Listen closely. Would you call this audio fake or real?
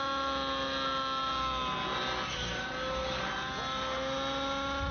real